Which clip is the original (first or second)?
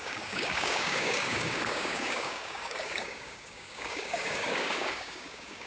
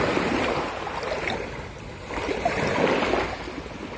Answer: second